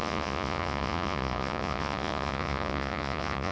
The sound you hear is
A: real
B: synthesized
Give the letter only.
B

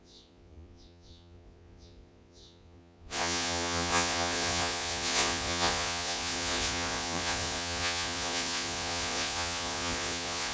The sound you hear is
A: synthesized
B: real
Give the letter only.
A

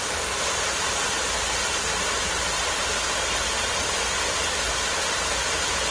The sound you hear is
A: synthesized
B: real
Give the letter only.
B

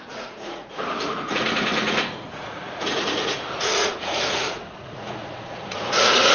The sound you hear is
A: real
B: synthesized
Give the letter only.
B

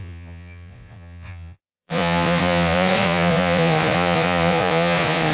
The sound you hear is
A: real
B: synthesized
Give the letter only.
B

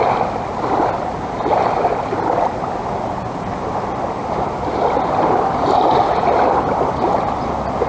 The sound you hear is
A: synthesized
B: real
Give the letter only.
B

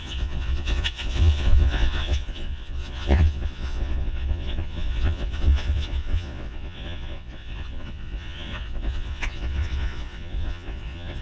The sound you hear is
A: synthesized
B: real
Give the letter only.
A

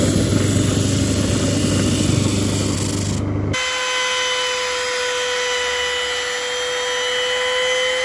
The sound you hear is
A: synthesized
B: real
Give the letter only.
B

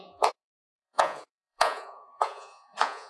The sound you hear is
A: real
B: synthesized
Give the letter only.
B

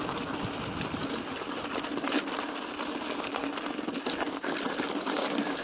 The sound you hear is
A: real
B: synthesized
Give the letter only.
A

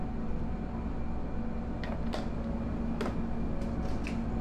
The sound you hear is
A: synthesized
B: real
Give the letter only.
B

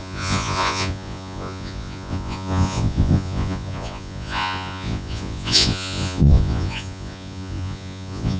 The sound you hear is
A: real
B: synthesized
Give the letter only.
B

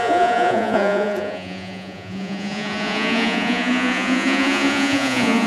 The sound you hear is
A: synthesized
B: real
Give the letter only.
A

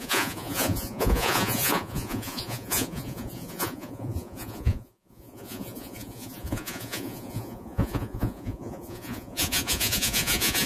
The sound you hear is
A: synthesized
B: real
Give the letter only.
A